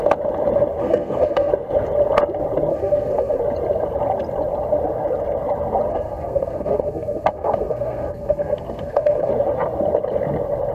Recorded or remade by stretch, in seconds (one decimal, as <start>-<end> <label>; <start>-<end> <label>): 0.0-0.8 recorded; 0.8-1.5 remade; 1.5-2.7 recorded; 2.7-3.4 remade; 3.4-5.9 recorded; 5.9-9.3 remade; 9.3-10.7 recorded